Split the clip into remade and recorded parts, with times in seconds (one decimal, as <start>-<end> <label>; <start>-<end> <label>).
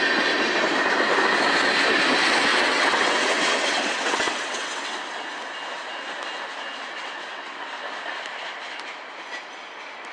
0.0-2.5 recorded; 2.5-5.0 remade; 5.0-6.9 recorded; 6.9-7.7 remade; 7.7-10.1 recorded